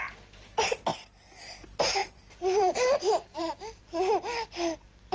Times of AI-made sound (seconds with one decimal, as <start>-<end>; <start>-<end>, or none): 2.0-3.8